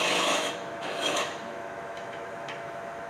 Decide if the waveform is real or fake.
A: fake